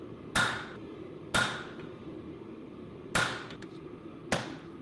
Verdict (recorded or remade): recorded